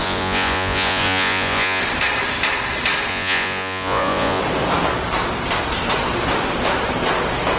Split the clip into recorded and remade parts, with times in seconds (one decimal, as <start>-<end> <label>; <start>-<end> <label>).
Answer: 0.0-1.8 remade; 1.8-3.1 recorded; 3.1-4.4 remade; 4.4-7.6 recorded